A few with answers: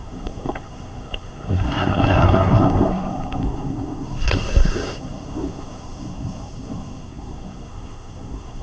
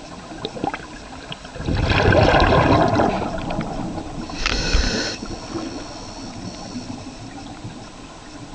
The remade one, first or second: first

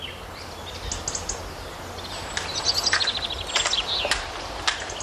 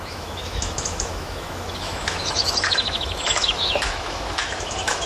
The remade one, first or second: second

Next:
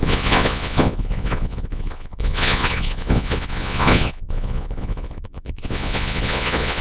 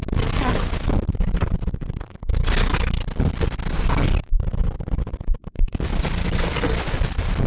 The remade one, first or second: first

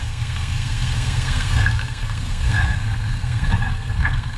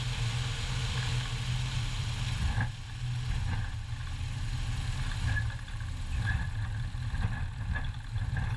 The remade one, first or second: first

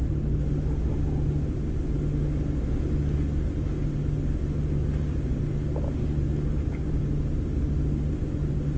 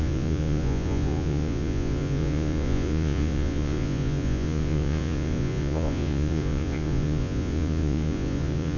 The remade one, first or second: second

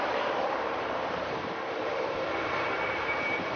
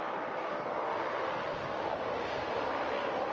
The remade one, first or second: first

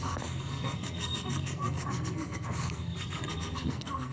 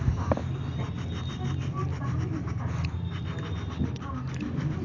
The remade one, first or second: first